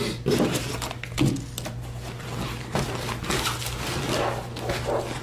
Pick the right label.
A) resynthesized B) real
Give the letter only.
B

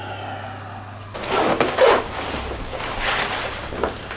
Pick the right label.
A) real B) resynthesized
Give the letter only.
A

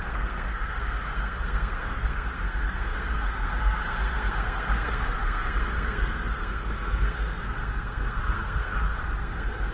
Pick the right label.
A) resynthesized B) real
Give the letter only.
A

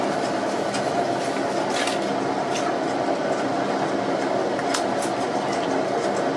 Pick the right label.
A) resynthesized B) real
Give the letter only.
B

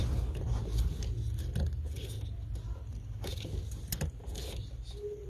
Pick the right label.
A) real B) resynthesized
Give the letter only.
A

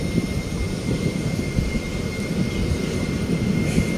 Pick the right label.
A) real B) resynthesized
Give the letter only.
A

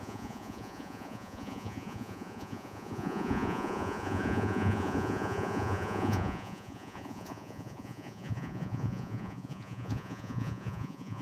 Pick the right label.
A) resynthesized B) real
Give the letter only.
A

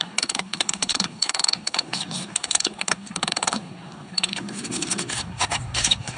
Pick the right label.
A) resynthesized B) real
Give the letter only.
A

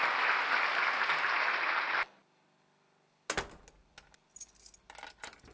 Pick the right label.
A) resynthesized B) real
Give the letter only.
B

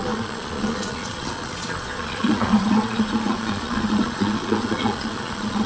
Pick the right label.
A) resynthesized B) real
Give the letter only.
A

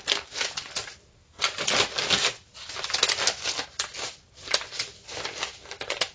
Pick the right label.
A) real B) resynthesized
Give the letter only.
A